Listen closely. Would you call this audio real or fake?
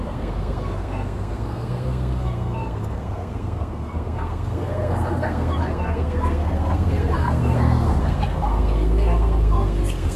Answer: fake